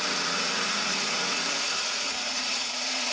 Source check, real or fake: fake